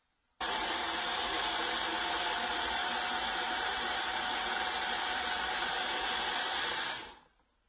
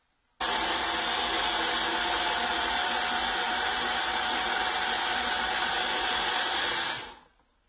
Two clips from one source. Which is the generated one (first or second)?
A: first